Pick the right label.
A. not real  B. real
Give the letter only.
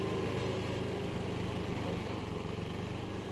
B